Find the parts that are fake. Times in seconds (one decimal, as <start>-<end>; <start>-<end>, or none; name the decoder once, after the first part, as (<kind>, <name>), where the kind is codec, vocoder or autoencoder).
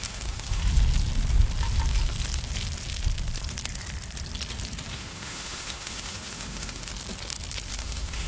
0.0-0.6 (autoencoder, DAC-VAE); 4.9-6.9; 7.7-8.3